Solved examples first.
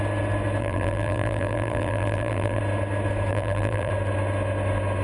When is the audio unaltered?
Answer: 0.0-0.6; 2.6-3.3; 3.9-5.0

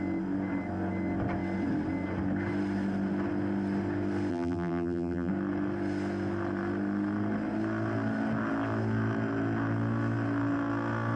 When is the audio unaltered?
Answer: 0.0-4.3; 5.3-11.2

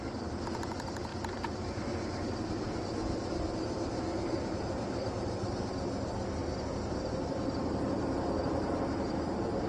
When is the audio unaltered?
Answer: 0.0-1.1; 5.6-6.4; 8.8-9.7

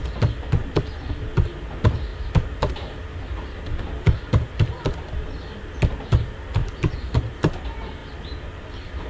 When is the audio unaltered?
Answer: 0.0-2.1; 5.6-6.6; 7.4-8.0